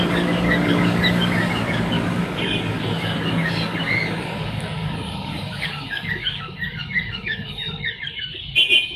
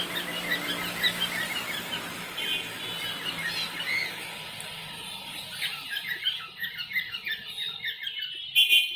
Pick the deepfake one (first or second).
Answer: first